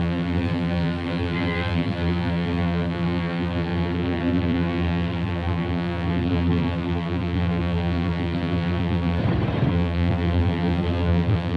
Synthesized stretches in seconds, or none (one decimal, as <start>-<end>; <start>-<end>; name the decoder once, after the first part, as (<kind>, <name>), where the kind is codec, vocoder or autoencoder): 0.0-9.2 (vocoder, BigVGAN v2); 9.7-11.6